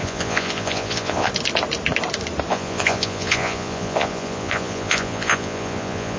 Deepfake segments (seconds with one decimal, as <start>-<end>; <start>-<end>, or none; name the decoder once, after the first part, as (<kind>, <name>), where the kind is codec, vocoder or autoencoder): 0.0-1.3 (vocoder, Vocos); 2.5-6.2